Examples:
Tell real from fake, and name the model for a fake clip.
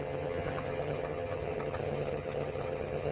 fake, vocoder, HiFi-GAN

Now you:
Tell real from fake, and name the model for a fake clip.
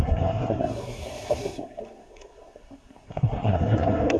fake, codec, SNAC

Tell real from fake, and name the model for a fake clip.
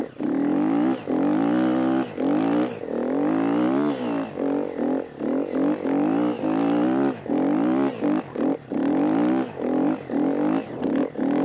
real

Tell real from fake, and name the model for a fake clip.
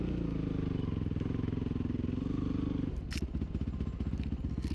real